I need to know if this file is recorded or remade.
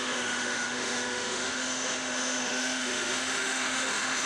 remade